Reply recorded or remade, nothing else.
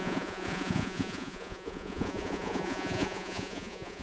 remade